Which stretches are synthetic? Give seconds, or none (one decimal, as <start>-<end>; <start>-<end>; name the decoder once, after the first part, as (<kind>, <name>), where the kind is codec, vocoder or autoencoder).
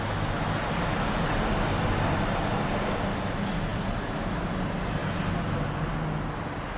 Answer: none